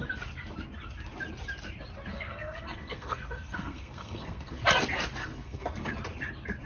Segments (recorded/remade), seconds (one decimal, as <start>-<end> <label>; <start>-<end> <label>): 0.0-2.1 recorded; 2.1-4.6 remade; 4.6-5.2 recorded; 5.2-5.9 remade; 5.9-6.7 recorded